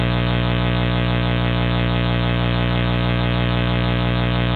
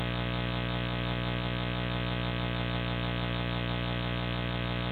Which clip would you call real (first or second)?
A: second